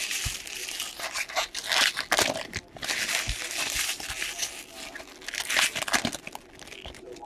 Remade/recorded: recorded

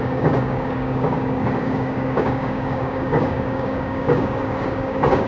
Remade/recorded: remade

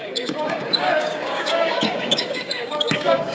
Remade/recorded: remade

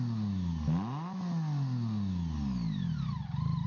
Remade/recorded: recorded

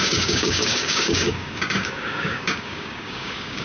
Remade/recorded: remade